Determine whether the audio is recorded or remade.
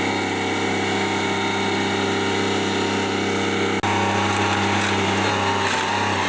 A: recorded